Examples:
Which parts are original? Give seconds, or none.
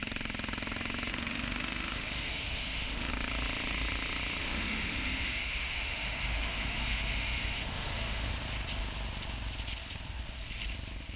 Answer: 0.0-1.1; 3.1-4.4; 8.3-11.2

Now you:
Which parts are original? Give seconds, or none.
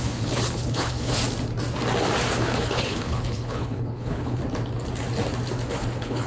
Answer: 1.2-2.3; 4.4-5.7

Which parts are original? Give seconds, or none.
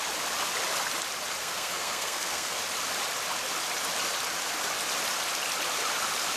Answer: 0.0-1.4; 2.6-6.4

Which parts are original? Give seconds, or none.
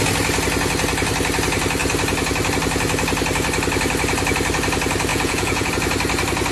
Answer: 0.0-5.1; 5.7-6.5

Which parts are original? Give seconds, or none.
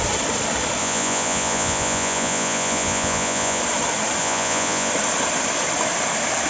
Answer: 0.0-0.8; 3.6-4.2; 4.9-6.5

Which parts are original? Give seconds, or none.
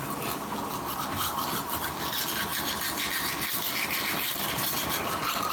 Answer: 0.0-5.5